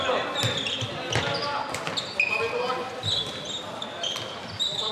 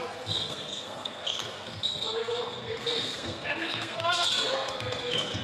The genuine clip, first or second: first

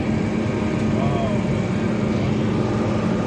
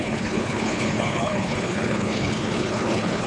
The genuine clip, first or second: first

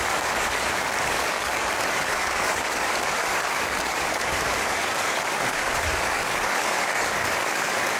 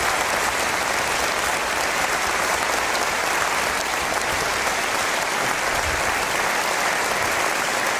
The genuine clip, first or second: second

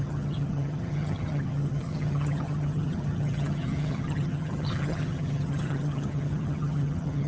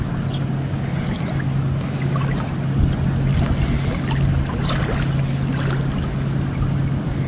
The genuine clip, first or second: second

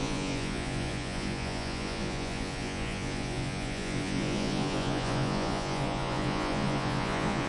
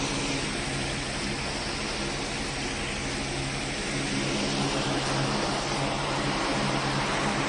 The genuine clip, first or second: second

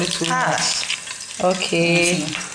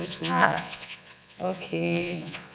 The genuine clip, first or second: first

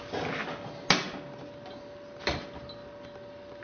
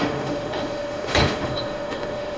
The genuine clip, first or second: first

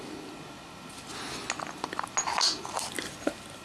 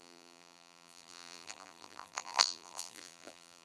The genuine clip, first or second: first